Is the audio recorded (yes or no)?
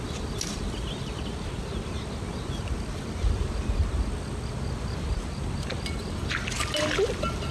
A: yes